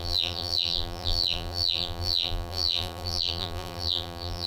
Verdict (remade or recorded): remade